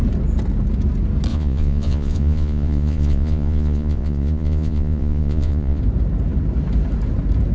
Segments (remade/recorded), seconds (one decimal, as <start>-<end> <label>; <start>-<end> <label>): 0.0-1.3 recorded; 1.3-5.8 remade; 5.8-7.5 recorded